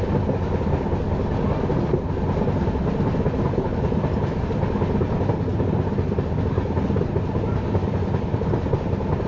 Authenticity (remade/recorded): recorded